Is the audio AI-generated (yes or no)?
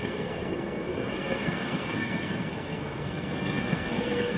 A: yes